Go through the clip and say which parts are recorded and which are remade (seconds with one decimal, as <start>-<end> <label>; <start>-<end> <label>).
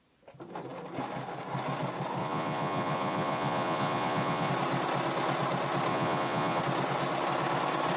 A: 0.0-2.2 recorded; 2.2-4.5 remade; 4.5-5.9 recorded; 5.9-6.6 remade; 6.6-8.0 recorded